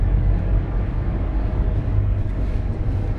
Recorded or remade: remade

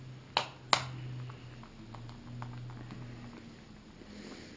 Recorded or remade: recorded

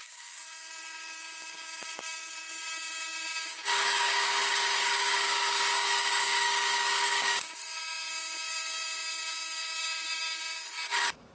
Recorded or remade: remade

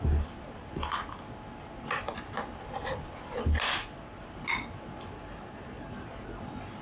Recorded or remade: recorded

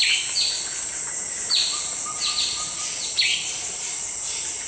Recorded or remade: recorded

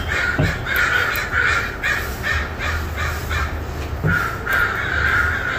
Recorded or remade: recorded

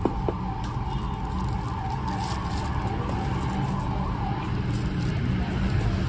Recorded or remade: recorded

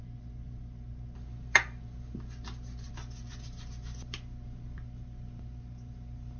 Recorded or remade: recorded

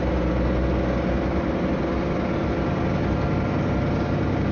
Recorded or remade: recorded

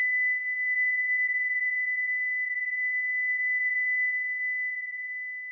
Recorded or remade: remade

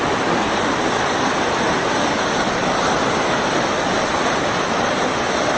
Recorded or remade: recorded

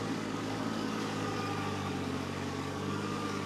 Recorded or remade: remade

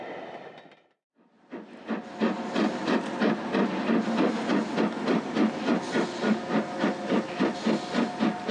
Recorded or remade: recorded